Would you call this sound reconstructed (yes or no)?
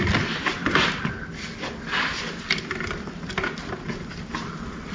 no